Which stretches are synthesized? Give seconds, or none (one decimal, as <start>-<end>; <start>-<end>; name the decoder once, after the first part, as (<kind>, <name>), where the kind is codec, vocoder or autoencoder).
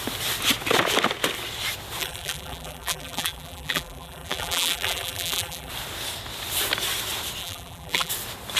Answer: 2.0-5.7 (vocoder, BigVGAN v2); 7.4-8.1